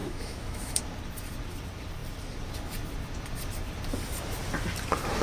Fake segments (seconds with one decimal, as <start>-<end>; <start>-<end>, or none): 0.0-0.8